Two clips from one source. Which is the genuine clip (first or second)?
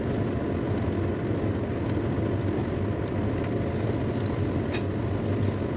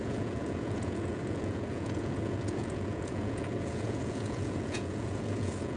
first